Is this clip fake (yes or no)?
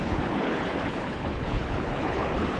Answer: yes